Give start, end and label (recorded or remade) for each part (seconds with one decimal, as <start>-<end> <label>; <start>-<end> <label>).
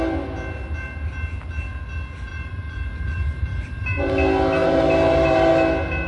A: 0.0-2.3 recorded; 2.3-4.1 remade; 4.1-4.6 recorded; 4.6-5.5 remade; 5.5-6.1 recorded